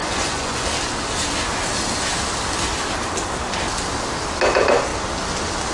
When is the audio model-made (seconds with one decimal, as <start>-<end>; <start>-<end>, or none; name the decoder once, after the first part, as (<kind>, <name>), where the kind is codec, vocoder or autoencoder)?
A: 0.0-0.6 (vocoder, Vocos)